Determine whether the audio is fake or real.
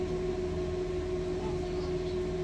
real